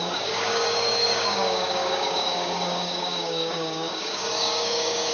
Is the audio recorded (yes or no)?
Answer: no